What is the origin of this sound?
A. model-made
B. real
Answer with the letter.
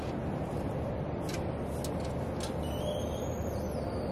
B